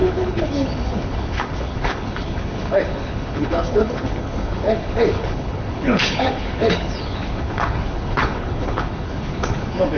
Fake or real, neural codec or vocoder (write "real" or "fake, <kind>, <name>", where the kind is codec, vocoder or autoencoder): fake, codec, HILCodec